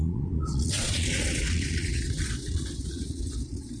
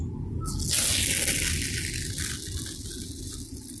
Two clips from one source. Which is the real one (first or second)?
second